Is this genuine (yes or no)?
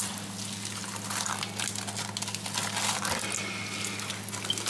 yes